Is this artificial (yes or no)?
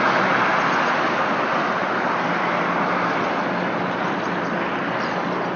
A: no